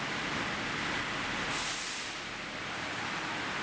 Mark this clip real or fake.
real